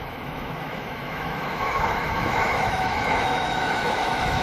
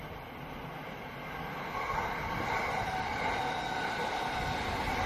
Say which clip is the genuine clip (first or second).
second